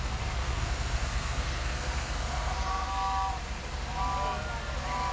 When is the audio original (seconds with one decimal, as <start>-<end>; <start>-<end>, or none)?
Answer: 0.0-0.4; 3.3-5.1